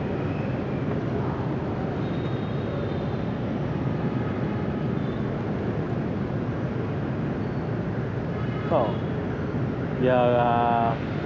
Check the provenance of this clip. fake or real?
real